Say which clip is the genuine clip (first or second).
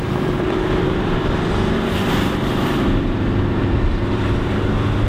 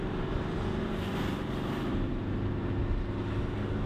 second